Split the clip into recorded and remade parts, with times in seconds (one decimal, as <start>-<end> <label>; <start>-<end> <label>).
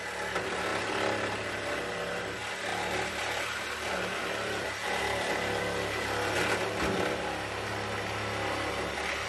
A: 0.0-0.7 recorded; 0.7-1.5 remade; 1.5-2.7 recorded; 2.7-6.4 remade; 6.4-9.3 recorded